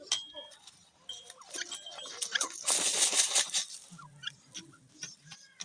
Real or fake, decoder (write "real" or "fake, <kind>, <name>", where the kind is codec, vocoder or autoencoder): real